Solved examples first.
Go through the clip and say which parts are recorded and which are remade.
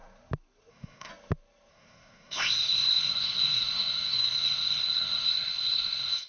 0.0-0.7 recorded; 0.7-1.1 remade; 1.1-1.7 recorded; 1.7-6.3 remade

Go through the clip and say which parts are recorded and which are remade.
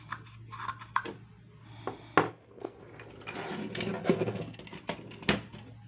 0.0-2.3 recorded; 2.3-2.8 remade; 2.8-4.0 recorded; 4.0-4.6 remade; 4.6-5.9 recorded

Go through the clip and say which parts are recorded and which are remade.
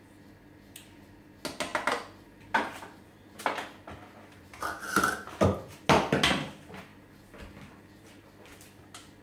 0.0-9.2 recorded